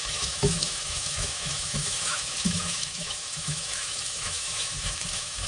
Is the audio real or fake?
fake